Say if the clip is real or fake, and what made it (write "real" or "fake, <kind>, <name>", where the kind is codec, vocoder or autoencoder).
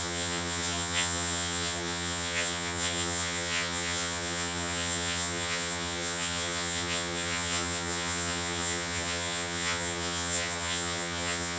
fake, vocoder, HiFi-GAN